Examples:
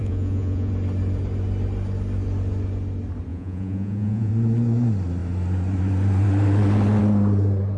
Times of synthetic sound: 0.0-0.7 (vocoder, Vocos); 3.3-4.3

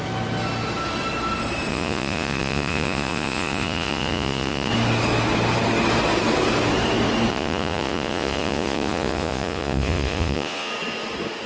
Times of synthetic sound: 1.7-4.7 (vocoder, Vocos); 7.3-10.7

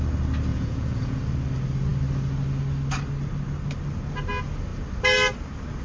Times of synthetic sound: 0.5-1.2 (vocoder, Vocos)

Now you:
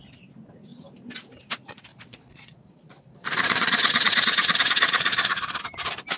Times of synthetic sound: 1.9-5.6 (vocoder, Vocos)

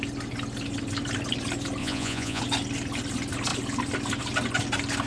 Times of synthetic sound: 1.8-2.4 (vocoder, Vocos)

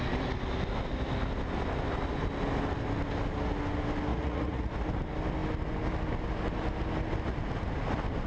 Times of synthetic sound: 4.1-4.7 (vocoder, Vocos)

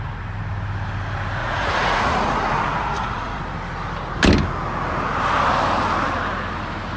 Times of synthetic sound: 1.4-3.4 (vocoder, Vocos)

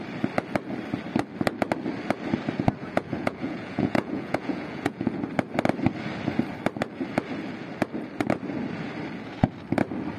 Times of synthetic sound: 2.8-5.2 (vocoder, Vocos)